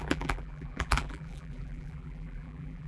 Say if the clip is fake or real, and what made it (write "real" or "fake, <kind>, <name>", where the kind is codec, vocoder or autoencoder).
fake, vocoder, BigVGAN v2